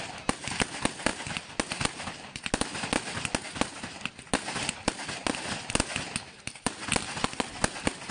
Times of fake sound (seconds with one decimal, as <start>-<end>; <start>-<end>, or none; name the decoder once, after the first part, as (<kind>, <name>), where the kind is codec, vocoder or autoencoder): none